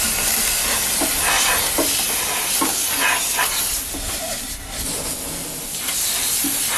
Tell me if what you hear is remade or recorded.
recorded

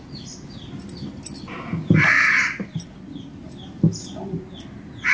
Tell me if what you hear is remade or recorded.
recorded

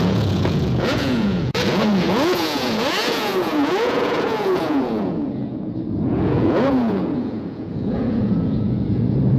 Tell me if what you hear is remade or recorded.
remade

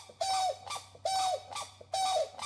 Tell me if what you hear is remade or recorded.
recorded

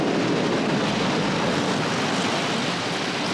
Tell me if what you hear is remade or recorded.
recorded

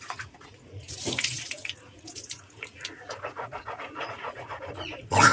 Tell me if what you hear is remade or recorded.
remade